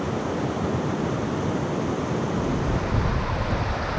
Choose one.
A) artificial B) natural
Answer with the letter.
B